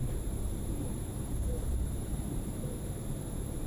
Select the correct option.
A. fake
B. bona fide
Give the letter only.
A